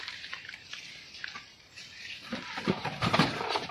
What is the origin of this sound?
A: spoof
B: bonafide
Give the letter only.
A